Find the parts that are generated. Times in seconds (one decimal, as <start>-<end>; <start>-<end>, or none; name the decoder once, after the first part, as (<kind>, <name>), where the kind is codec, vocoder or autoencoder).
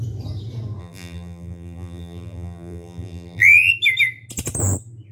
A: 0.8-3.7 (vocoder, BigVGAN v2)